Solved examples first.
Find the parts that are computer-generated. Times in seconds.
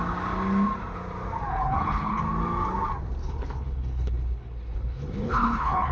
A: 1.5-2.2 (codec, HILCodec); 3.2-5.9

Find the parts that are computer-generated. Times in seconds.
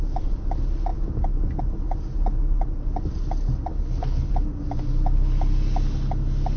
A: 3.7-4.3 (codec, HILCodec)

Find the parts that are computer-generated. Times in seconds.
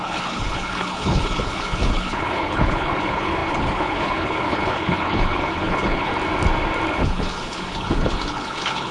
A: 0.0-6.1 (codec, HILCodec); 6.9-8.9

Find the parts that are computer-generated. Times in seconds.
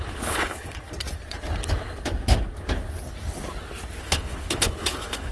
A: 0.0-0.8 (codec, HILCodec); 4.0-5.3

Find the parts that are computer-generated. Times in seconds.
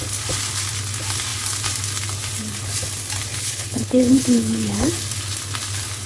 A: 3.3-4.9 (codec, HILCodec)